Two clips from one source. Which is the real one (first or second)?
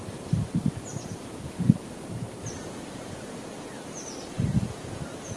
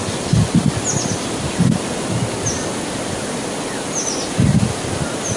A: second